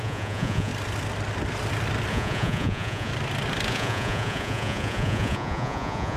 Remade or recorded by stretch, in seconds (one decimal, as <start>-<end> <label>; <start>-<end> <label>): 0.0-0.7 remade; 0.7-2.1 recorded; 2.1-3.1 remade; 3.1-3.7 recorded; 3.7-6.2 remade